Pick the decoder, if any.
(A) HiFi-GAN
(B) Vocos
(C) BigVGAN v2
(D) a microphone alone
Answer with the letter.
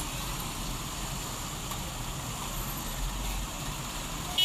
D